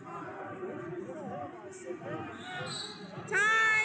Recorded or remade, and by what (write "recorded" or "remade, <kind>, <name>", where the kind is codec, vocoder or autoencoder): recorded